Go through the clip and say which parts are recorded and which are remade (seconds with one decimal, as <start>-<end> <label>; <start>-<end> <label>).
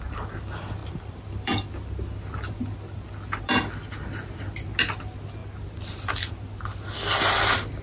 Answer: 0.0-0.8 recorded; 0.8-1.7 remade; 1.7-7.8 recorded